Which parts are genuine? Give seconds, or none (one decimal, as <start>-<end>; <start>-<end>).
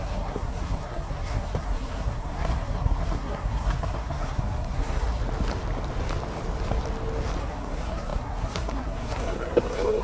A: 5.2-7.4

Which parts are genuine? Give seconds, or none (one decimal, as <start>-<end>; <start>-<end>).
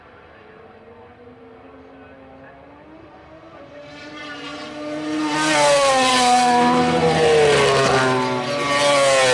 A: 0.0-9.3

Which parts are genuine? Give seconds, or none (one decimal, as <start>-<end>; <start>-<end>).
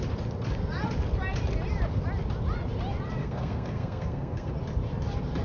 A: 0.0-3.2; 4.5-5.4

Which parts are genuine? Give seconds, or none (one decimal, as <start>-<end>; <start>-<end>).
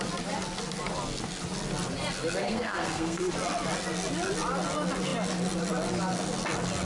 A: 0.0-2.4; 3.3-6.9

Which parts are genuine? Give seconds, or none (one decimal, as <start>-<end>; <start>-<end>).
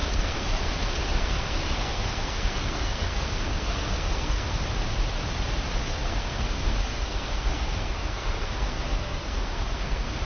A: 4.6-5.8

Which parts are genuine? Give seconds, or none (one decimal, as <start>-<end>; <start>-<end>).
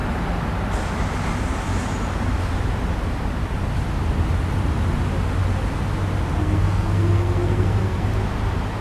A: 0.0-6.4; 8.1-8.8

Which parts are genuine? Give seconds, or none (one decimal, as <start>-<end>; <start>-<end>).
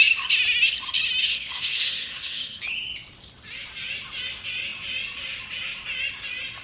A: 0.0-1.3; 2.6-6.6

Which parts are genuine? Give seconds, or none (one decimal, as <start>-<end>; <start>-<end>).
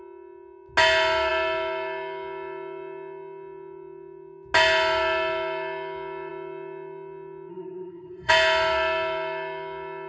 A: 0.0-7.5; 8.3-10.1